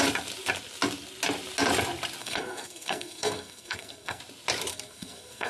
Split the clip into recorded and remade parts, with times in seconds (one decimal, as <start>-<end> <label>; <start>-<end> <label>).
0.0-2.2 recorded; 2.2-4.2 remade; 4.2-4.7 recorded; 4.7-5.5 remade